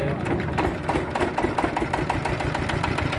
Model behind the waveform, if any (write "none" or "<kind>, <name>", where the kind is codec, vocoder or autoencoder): none